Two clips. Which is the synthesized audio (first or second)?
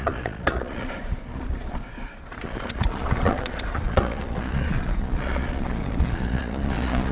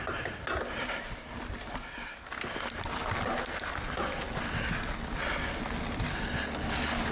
first